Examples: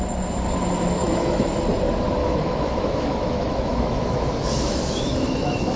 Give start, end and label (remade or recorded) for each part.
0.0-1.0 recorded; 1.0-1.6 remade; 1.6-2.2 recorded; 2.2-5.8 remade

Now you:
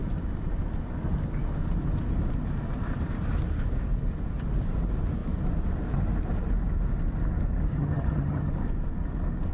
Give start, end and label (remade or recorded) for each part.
0.0-7.7 recorded; 7.7-8.5 remade; 8.5-9.5 recorded

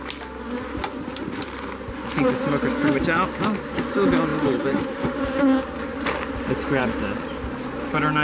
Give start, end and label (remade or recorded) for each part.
0.0-8.2 recorded

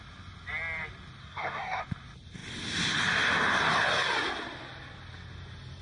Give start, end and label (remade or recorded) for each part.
0.0-1.2 recorded; 1.2-1.8 remade; 1.8-5.8 recorded